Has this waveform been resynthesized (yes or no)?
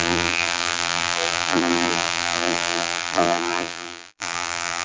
yes